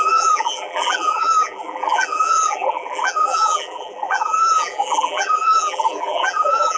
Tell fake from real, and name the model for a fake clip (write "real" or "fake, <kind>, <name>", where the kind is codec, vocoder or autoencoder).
fake, vocoder, BigVGAN v2